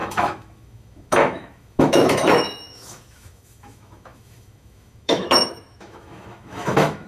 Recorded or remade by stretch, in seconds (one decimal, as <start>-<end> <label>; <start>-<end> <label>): 0.0-7.1 remade